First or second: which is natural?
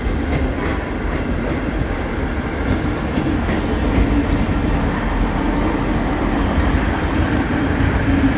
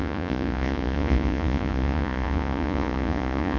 first